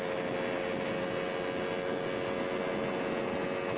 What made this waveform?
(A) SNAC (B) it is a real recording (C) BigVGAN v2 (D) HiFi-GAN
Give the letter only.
B